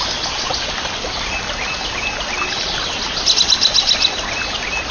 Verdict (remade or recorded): recorded